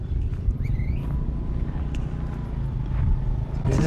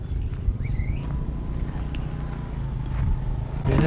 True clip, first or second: second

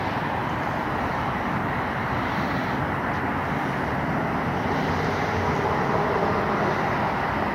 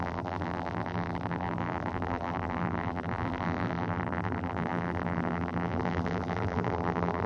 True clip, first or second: first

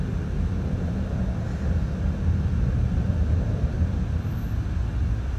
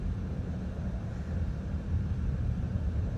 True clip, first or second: first